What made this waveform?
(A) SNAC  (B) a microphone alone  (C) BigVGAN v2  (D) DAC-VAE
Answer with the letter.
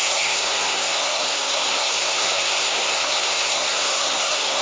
A